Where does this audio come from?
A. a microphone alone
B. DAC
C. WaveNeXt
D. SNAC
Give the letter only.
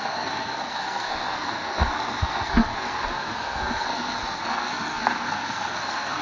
D